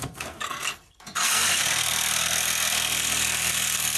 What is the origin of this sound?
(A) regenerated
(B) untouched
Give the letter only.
A